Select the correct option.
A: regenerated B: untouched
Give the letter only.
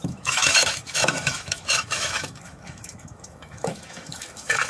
A